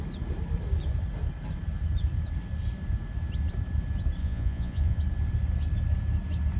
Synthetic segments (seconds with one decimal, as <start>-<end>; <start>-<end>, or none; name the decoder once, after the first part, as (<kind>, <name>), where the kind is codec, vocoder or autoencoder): 4.2-5.0 (vocoder, Vocos)